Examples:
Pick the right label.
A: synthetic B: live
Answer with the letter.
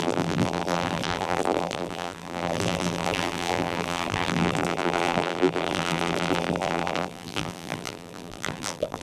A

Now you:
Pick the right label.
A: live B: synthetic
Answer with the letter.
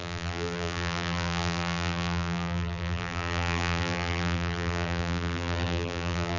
B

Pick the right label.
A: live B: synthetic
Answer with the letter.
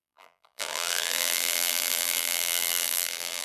B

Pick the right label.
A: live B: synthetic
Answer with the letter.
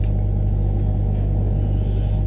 A